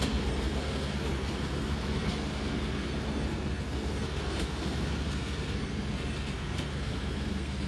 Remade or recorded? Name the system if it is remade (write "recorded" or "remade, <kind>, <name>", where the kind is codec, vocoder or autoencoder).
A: remade, codec, SNAC